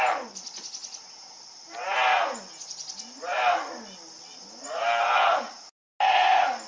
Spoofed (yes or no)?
no